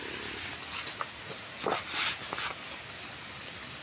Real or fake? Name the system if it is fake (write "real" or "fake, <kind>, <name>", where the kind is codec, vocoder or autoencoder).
real